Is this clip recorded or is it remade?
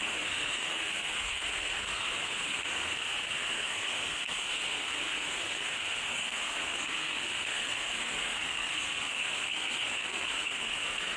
remade